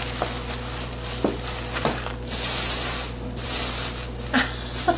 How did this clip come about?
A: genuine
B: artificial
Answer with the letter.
A